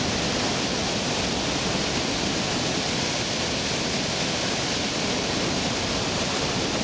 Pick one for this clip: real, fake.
real